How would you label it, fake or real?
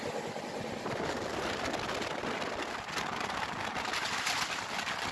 real